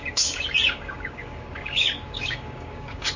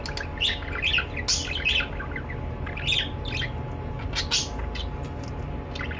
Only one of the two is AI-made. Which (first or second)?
first